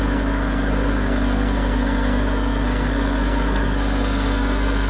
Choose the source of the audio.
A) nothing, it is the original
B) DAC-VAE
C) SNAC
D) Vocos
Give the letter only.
C